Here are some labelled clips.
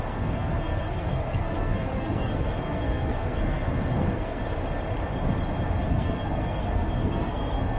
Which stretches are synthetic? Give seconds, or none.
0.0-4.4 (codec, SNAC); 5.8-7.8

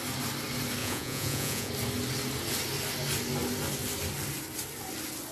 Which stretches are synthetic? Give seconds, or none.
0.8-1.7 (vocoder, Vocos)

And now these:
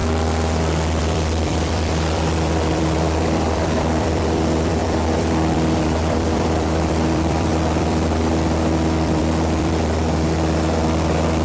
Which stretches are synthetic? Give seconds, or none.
1.0-11.4 (vocoder, BigVGAN v2)

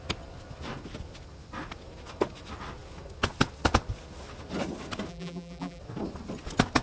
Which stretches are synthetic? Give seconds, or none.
5.1-5.8 (vocoder, BigVGAN v2)